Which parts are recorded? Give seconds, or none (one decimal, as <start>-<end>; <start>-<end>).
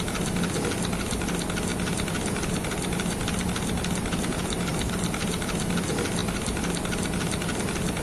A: 0.0-1.7; 4.2-4.7; 5.3-6.2; 7.6-8.0